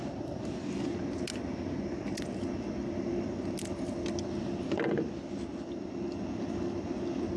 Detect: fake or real real